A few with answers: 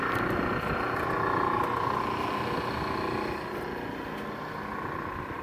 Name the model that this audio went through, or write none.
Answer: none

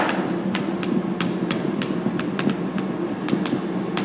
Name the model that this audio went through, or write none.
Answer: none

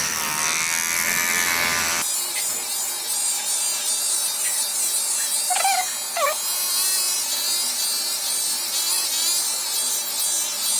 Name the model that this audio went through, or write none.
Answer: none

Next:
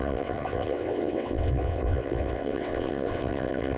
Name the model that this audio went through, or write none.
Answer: vocoder, WaveNeXt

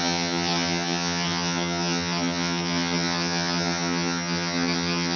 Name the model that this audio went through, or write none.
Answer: vocoder, HiFi-GAN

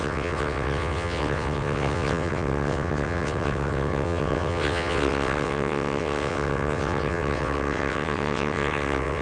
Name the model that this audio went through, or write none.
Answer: vocoder, WaveNeXt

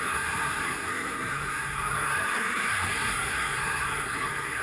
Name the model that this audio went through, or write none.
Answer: codec, SNAC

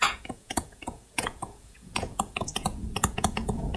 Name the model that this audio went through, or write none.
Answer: vocoder, Vocos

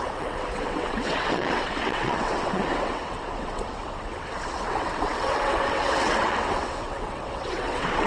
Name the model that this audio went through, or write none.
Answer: vocoder, WaveNeXt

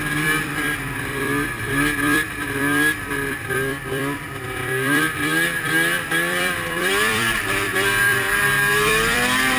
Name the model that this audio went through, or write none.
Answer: vocoder, BigVGAN v2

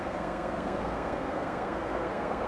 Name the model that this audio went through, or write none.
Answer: codec, SNAC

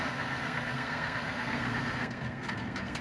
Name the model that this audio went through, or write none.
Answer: codec, SNAC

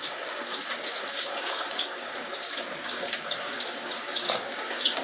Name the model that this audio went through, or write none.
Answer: codec, DAC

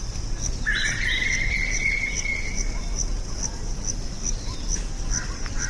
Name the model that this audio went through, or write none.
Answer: none